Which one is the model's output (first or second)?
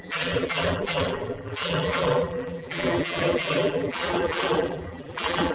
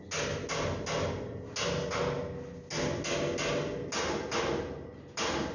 first